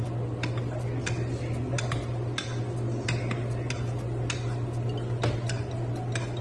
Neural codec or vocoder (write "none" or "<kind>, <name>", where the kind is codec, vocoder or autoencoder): none